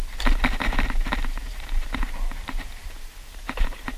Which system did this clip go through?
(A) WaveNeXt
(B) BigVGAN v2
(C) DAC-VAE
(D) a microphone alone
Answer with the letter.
D